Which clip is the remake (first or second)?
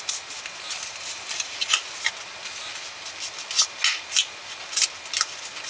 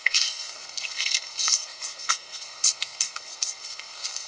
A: second